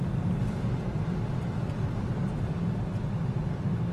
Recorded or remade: recorded